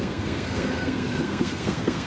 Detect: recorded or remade remade